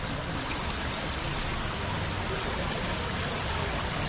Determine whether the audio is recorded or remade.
recorded